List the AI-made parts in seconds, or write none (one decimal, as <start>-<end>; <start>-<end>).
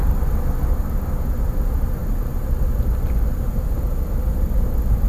0.7-5.1